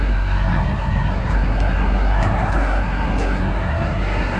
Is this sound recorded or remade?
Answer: remade